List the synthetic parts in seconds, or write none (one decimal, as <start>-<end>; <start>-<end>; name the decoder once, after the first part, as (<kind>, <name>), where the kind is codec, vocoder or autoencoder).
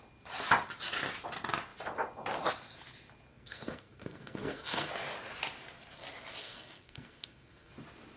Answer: 3.3-4.9 (codec, SNAC); 6.4-7.7